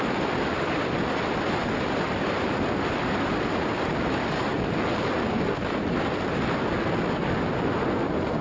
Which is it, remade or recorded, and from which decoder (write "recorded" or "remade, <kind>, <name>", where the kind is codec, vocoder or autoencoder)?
recorded